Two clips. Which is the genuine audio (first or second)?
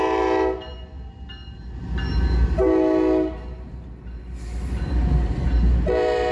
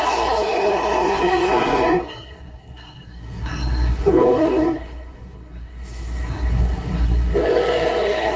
first